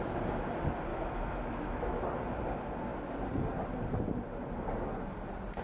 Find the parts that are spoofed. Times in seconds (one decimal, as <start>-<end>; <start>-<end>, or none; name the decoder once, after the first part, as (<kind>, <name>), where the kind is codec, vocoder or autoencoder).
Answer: 0.9-2.0 (autoencoder, DAC-VAE)